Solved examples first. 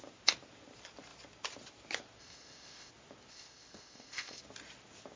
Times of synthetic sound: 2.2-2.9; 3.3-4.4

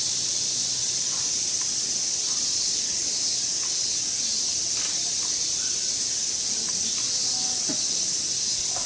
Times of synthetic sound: none

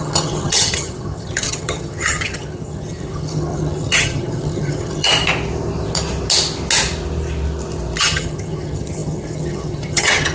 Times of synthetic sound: 0.0-5.1; 8.0-10.3

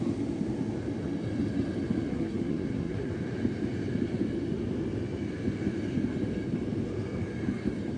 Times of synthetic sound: 2.1-3.1